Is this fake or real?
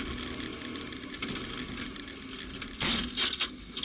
real